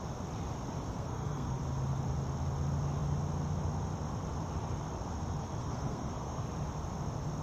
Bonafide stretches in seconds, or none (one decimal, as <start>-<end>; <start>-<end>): 0.0-0.9; 1.6-5.6; 6.4-7.4